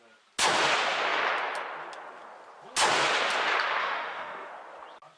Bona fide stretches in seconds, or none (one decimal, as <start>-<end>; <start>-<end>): 0.0-3.8; 4.5-5.2